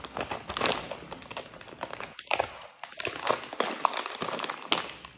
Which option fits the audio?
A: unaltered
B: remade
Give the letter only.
A